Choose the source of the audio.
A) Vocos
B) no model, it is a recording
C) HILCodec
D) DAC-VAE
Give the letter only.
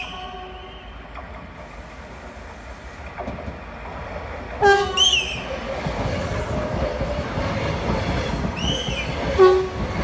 B